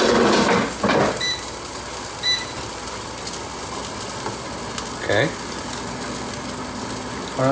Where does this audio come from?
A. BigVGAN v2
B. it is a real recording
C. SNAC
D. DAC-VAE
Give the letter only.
B